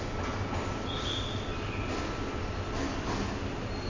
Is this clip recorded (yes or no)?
yes